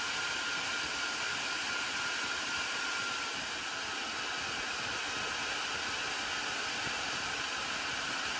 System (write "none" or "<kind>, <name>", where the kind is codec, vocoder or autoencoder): none